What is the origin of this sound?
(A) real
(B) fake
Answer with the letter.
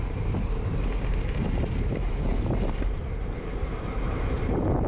B